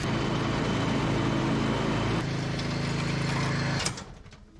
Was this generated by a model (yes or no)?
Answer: no